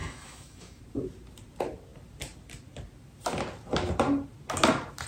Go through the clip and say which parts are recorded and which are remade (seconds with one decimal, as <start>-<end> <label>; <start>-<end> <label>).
0.0-0.8 remade; 0.8-5.1 recorded

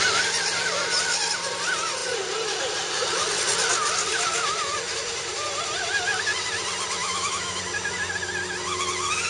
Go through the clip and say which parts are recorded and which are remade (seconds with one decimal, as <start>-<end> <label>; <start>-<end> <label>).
0.0-7.0 recorded; 7.0-7.6 remade; 7.6-9.3 recorded

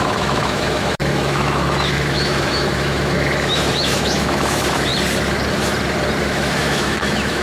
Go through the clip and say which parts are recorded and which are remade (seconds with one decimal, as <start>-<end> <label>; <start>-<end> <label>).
0.0-4.9 remade; 4.9-6.2 recorded; 6.2-7.4 remade

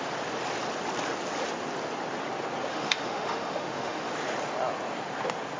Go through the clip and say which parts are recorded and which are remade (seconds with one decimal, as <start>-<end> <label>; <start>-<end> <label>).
0.0-2.7 recorded; 2.7-4.1 remade; 4.1-5.6 recorded

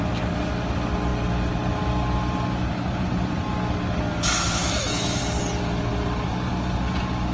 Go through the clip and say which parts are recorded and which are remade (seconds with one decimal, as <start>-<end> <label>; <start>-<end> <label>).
0.0-4.6 recorded; 4.6-5.2 remade; 5.2-7.3 recorded

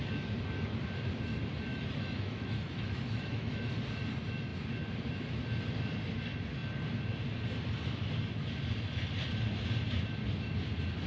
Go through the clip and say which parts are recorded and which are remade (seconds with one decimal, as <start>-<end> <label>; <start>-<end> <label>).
0.0-1.7 recorded; 1.7-3.7 remade; 3.7-11.1 recorded

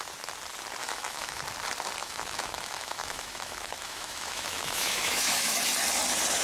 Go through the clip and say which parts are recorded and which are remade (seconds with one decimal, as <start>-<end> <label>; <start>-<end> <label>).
0.0-0.8 recorded; 0.8-1.4 remade; 1.4-2.0 recorded; 2.0-5.6 remade; 5.6-6.4 recorded

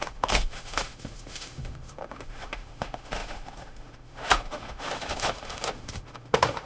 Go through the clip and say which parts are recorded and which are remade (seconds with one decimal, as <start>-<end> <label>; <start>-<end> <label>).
0.0-6.7 remade